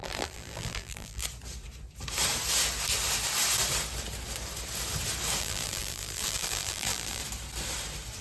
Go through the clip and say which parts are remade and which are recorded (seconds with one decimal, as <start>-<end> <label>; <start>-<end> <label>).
0.0-1.2 remade; 1.2-5.4 recorded; 5.4-7.2 remade; 7.2-8.2 recorded